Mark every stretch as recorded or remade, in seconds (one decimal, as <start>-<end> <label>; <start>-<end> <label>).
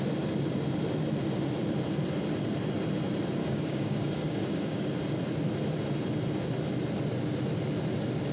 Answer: 0.0-3.4 recorded; 3.4-4.9 remade; 4.9-8.3 recorded